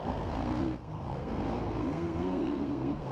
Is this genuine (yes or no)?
no